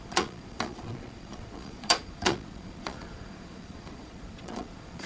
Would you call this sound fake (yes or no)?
yes